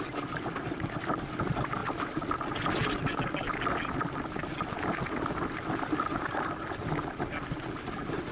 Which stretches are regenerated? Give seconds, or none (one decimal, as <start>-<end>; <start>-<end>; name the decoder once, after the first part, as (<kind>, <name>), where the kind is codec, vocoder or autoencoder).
none